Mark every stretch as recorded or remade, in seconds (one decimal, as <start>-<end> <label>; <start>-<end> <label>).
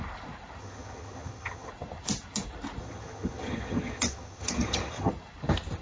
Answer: 0.0-0.6 recorded; 0.6-1.7 remade; 1.7-2.8 recorded; 2.8-5.1 remade; 5.1-5.8 recorded